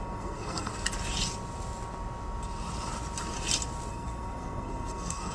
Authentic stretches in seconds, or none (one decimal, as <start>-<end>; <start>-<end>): 0.7-3.9